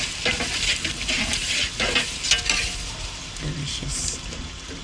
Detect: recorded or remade recorded